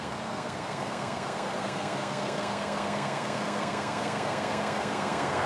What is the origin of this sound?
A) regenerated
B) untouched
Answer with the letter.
A